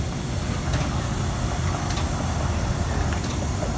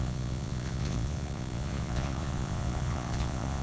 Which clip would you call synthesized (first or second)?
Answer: second